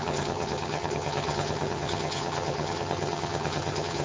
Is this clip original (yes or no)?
no